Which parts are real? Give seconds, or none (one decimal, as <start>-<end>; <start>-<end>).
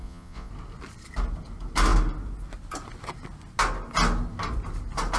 0.5-5.2